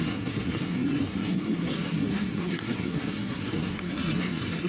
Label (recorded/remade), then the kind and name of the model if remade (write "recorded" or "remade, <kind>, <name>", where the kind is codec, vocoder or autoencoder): remade, codec, SNAC